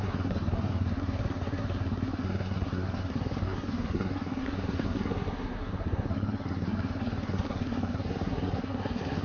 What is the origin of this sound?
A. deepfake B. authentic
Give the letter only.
A